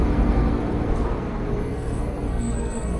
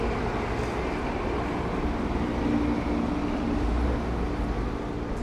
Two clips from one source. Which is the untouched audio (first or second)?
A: second